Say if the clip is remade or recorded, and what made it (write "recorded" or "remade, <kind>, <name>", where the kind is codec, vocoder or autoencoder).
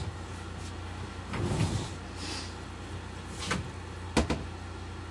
recorded